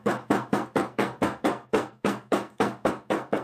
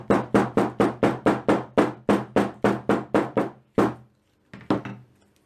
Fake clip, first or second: first